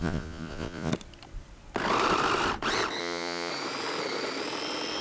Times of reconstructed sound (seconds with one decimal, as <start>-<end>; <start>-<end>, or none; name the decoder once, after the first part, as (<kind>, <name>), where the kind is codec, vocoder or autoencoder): 0.0-0.9 (vocoder, Vocos); 3.0-3.5